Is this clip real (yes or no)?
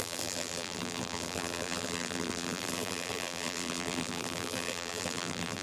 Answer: no